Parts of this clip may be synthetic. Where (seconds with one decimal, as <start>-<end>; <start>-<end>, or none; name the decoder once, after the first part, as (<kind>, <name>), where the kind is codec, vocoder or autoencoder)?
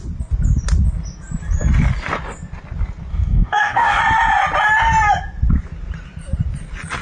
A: 3.1-4.0 (codec, DAC)